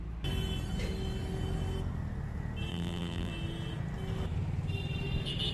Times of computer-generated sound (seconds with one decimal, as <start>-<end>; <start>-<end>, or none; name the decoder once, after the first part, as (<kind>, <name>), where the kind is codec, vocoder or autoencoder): 2.7-3.3 (vocoder, BigVGAN v2)